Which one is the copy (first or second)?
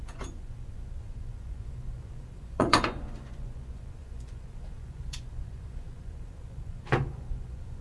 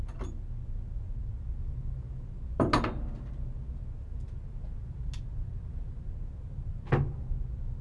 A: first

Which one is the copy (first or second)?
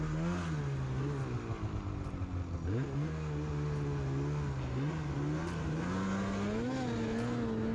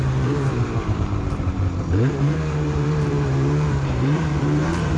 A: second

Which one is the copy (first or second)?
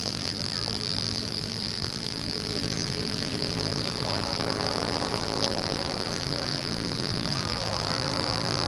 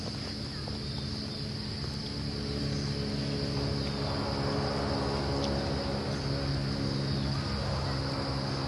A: first